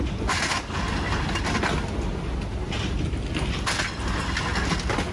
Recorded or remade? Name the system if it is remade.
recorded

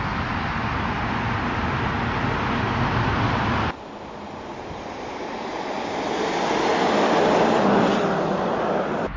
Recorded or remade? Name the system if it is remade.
recorded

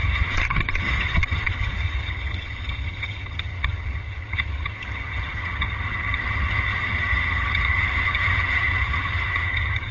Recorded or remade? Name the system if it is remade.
remade, vocoder, HiFi-GAN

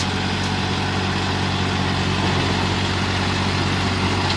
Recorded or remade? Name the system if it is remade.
recorded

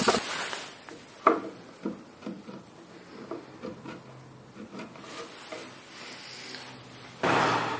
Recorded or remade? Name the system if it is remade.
recorded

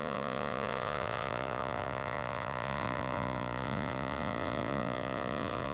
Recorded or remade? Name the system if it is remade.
remade, vocoder, Vocos